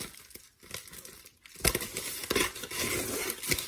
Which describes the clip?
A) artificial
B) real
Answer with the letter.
B